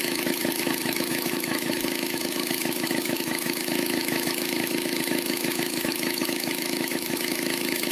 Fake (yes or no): yes